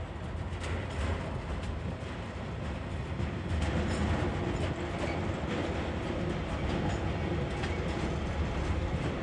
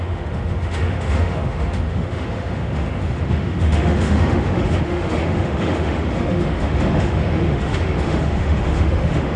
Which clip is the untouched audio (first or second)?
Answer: first